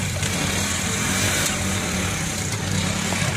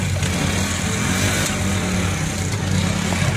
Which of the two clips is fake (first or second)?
first